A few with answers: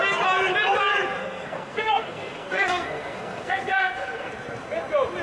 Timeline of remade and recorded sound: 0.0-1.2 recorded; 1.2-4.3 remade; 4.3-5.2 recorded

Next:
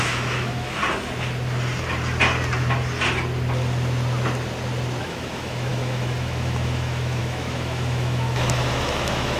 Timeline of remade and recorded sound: 0.0-0.8 remade; 0.8-5.0 recorded; 5.0-9.4 remade